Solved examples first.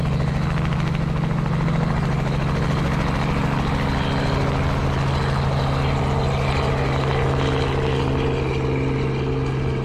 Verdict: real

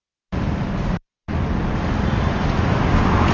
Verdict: real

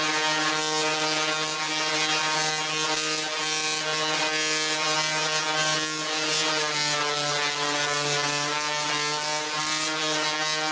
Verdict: real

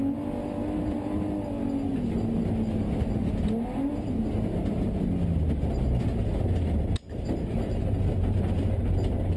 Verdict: real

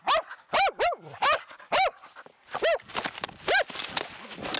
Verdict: real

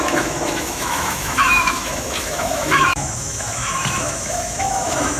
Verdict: fake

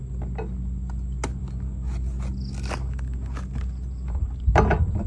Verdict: real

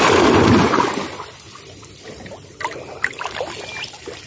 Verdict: real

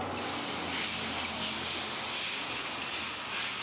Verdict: real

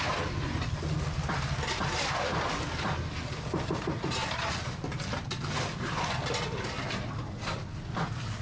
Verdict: real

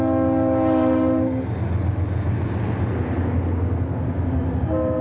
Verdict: real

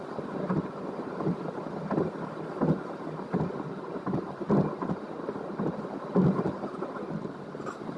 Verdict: real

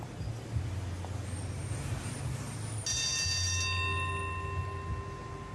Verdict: real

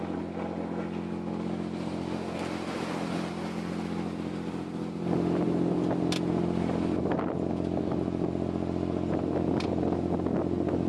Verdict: real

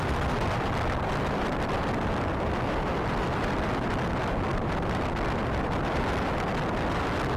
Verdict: real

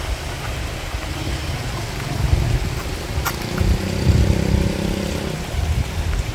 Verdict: real